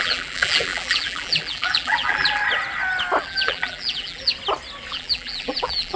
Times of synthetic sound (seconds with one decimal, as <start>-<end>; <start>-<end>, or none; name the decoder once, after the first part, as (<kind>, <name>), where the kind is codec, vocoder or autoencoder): 0.0-2.4 (vocoder, BigVGAN v2); 3.2-4.3; 4.9-6.0